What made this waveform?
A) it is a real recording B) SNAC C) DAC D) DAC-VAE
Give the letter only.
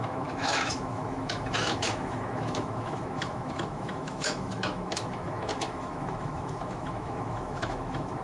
D